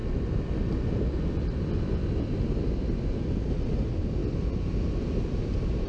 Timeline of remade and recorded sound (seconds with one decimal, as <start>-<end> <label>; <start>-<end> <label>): 0.0-3.5 recorded; 3.5-4.2 remade; 4.2-5.2 recorded; 5.2-5.9 remade